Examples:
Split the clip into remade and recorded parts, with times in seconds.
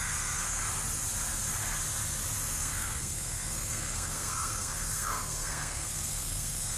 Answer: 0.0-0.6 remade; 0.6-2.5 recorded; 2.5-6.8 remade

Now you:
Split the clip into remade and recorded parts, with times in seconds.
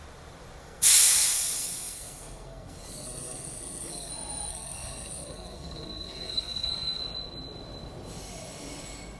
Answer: 0.0-0.6 recorded; 0.6-4.1 remade; 4.1-4.5 recorded; 4.5-7.0 remade; 7.0-9.2 recorded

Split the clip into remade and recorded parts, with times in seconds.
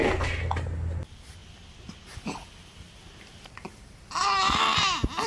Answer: 0.0-5.3 recorded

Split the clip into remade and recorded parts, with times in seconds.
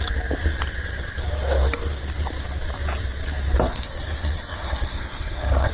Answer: 0.0-3.7 recorded; 3.7-5.7 remade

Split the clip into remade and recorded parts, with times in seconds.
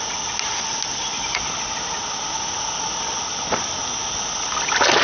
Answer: 0.0-5.0 recorded